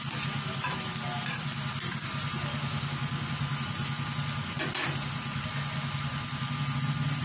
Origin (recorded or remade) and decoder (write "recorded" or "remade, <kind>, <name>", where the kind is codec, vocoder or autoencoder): recorded